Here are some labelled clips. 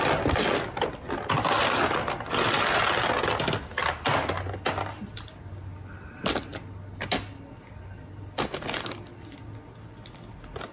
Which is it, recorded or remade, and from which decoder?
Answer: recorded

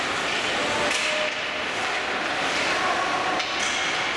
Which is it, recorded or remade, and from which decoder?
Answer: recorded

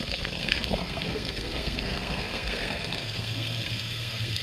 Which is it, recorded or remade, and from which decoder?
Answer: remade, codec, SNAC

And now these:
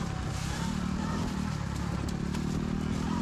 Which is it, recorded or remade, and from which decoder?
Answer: recorded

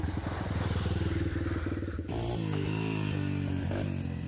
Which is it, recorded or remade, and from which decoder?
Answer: recorded